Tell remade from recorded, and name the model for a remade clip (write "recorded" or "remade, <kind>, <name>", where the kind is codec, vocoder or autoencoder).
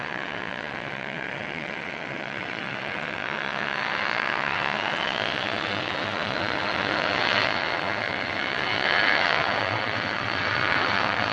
remade, vocoder, WaveNeXt